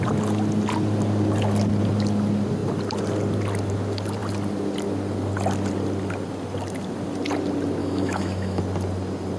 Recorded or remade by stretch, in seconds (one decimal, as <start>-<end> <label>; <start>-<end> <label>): 0.0-7.8 recorded; 7.8-8.6 remade; 8.6-9.4 recorded